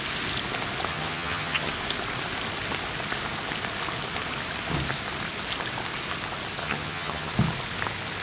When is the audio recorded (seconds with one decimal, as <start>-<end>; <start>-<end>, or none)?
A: 0.0-0.9; 1.7-6.6; 7.3-8.2